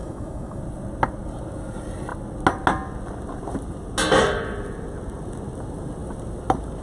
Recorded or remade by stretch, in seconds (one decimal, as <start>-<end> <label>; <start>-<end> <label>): 0.0-0.6 remade; 0.6-6.8 recorded